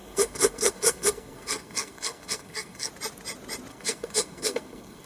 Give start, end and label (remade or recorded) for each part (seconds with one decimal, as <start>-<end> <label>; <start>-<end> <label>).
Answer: 0.0-2.9 remade; 2.9-3.7 recorded; 3.7-5.1 remade